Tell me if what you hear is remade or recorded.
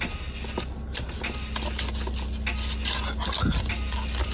recorded